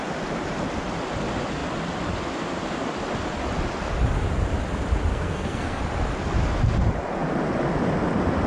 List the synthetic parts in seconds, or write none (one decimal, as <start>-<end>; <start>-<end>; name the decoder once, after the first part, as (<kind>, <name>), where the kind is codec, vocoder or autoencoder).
5.1-5.8 (codec, SNAC)